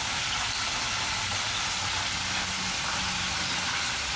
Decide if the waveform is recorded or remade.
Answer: recorded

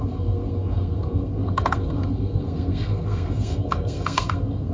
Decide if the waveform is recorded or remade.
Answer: remade